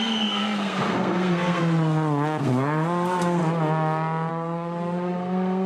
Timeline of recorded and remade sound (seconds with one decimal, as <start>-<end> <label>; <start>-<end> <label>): 0.0-1.6 remade; 1.6-2.4 recorded; 2.4-3.4 remade; 3.4-4.3 recorded; 4.3-5.7 remade